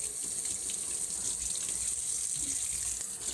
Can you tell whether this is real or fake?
real